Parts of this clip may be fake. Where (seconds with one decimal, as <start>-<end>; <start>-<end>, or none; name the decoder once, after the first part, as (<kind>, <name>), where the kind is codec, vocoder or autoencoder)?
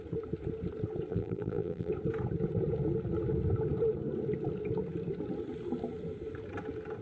1.1-1.9 (vocoder, BigVGAN v2)